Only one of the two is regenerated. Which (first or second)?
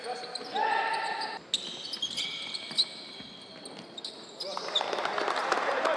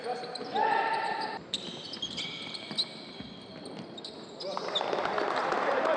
second